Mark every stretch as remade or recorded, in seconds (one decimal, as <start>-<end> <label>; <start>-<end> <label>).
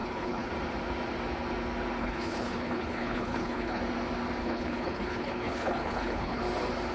0.0-0.5 remade; 0.5-2.0 recorded; 2.0-3.8 remade; 3.8-4.4 recorded; 4.4-6.4 remade; 6.4-6.9 recorded